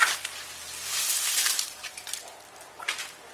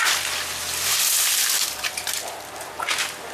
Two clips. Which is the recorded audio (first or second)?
second